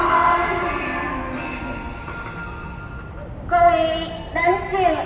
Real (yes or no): yes